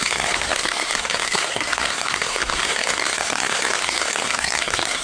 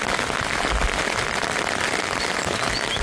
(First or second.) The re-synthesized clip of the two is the first